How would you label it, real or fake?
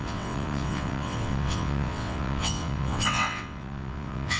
fake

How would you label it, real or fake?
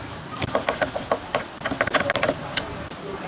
real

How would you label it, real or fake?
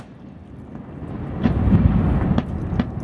real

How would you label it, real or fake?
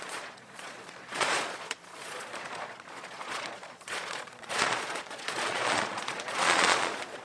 fake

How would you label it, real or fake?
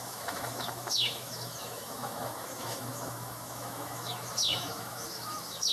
fake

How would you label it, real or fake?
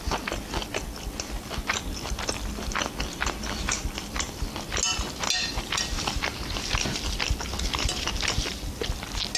real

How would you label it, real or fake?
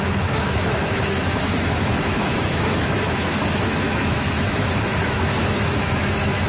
fake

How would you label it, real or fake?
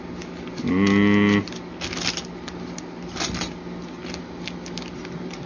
real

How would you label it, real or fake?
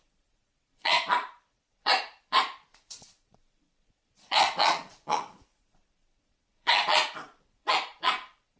fake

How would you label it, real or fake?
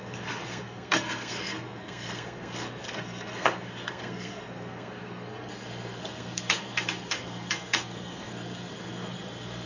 fake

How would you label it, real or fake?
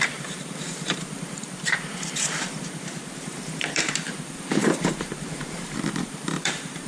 fake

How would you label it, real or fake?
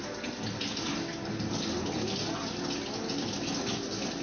real